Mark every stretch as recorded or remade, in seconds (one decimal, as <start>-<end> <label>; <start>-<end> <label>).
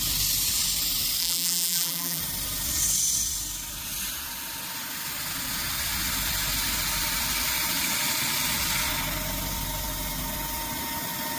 0.0-1.2 recorded; 1.2-2.2 remade; 2.2-11.4 recorded